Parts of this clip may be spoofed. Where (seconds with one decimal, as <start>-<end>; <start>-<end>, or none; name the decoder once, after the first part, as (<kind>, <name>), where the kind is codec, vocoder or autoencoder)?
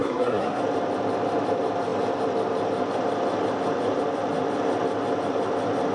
0.0-0.6 (codec, SNAC)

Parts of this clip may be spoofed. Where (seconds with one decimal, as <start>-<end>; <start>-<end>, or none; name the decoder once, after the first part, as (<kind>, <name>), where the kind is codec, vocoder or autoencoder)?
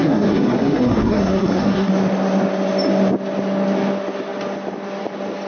0.0-1.9 (codec, SNAC)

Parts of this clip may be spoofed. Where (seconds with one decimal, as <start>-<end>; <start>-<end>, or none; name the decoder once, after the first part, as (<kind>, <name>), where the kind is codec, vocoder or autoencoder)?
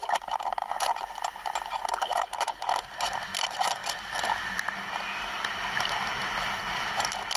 none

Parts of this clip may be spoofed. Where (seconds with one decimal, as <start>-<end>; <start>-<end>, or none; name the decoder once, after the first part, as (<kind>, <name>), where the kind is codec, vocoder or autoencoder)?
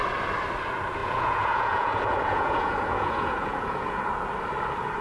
1.0-4.0 (vocoder, Vocos)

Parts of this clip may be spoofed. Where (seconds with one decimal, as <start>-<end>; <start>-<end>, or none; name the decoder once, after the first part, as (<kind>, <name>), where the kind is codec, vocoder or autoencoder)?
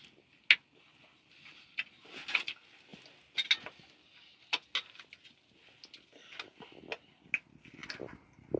none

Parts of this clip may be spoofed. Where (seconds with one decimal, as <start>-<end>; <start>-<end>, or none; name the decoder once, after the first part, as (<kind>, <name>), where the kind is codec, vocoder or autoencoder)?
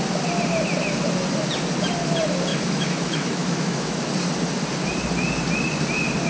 2.5-4.0 (autoencoder, DAC-VAE)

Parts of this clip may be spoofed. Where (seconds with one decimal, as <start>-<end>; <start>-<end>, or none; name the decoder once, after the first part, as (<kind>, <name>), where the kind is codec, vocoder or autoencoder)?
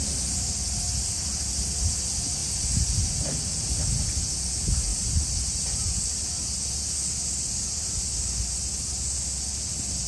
2.4-3.8 (vocoder, BigVGAN v2); 4.9-5.9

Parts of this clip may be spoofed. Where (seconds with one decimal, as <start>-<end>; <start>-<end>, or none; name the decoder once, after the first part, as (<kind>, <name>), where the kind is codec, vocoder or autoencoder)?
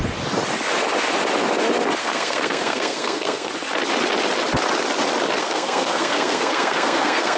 2.0-3.5 (codec, SNAC); 5.4-7.4